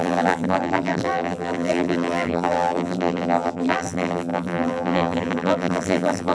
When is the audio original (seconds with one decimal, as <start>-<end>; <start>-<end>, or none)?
none